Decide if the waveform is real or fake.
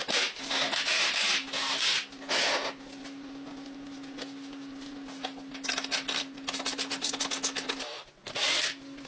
real